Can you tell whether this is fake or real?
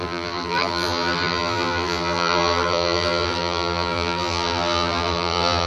fake